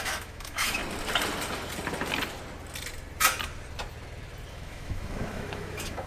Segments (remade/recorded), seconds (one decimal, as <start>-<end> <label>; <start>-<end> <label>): 0.0-0.8 remade; 0.8-4.5 recorded; 4.5-6.1 remade